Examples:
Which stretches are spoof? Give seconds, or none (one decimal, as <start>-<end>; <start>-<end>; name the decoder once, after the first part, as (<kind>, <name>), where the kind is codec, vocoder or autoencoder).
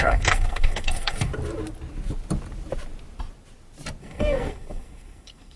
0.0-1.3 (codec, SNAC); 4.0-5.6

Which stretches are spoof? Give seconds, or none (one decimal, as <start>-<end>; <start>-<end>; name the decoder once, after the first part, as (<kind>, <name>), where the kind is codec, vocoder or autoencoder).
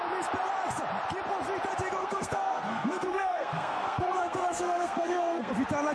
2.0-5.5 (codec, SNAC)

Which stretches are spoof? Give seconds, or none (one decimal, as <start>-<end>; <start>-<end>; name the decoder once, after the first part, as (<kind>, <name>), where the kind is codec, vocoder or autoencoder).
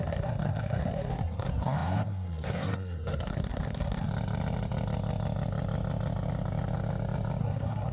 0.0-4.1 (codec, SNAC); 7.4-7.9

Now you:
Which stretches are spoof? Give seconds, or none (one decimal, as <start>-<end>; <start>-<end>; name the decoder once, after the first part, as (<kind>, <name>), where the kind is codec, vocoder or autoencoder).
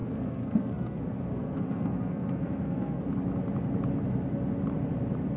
0.0-3.0 (codec, SNAC)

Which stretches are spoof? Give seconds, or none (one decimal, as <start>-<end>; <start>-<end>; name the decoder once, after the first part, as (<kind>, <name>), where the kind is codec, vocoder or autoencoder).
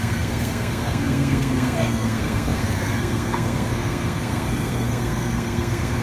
0.0-6.0 (codec, SNAC)